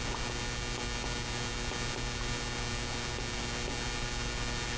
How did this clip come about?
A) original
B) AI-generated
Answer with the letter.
A